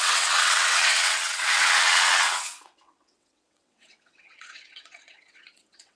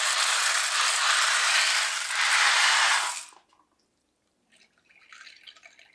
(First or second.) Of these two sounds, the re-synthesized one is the first